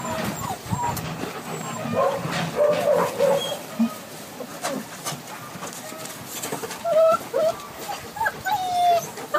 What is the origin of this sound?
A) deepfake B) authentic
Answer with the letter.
B